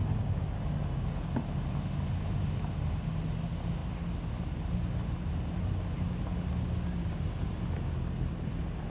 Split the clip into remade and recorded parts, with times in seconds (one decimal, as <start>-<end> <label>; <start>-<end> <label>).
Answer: 0.0-8.9 recorded